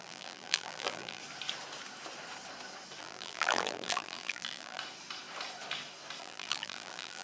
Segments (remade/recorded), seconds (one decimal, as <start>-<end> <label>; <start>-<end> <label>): 0.0-1.2 remade; 1.2-3.0 recorded; 3.0-4.8 remade; 4.8-6.2 recorded; 6.2-7.2 remade